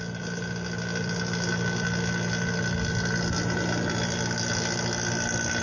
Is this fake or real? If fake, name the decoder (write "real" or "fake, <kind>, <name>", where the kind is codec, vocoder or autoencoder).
real